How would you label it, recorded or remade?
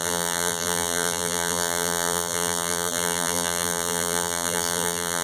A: remade